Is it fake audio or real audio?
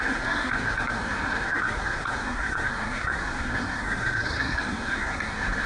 fake